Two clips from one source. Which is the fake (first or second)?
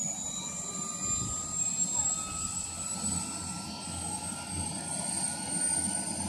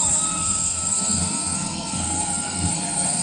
second